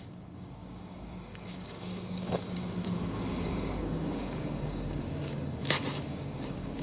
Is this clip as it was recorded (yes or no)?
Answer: no